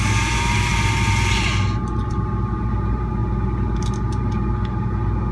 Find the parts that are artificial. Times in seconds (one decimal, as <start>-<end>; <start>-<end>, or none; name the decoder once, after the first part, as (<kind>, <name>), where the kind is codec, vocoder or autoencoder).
none